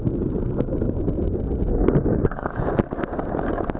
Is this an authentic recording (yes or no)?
yes